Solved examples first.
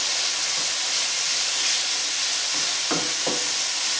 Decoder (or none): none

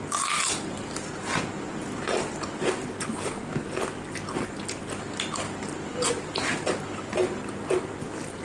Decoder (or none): none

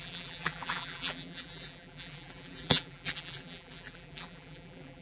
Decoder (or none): vocoder, BigVGAN v2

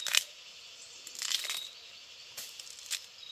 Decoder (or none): none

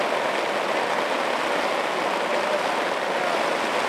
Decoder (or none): none